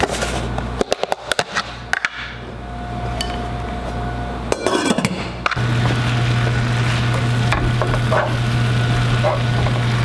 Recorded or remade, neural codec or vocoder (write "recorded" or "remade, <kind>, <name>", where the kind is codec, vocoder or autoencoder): recorded